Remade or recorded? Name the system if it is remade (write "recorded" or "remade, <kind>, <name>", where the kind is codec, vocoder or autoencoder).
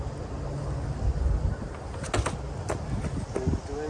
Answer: recorded